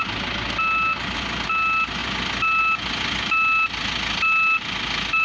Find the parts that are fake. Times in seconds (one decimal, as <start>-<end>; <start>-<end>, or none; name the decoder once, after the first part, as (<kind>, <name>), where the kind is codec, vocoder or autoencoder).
none